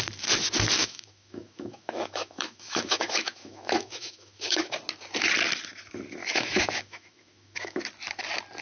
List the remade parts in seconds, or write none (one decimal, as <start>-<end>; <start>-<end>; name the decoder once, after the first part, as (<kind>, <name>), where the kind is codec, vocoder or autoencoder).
0.8-4.8 (autoencoder, DAC-VAE); 6.2-7.8